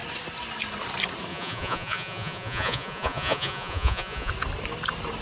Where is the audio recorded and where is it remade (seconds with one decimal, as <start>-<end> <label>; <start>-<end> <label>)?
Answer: 0.0-1.3 recorded; 1.3-4.3 remade; 4.3-5.2 recorded